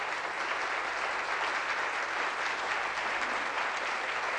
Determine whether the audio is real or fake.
real